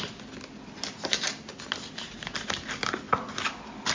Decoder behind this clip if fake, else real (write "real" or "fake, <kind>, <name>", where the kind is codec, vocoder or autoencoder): real